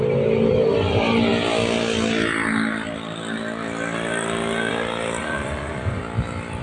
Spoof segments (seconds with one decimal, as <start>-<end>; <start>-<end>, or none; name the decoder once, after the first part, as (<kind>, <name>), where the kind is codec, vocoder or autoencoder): 5.2-6.0 (vocoder, Vocos)